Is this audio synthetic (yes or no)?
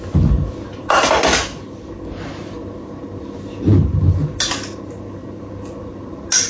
no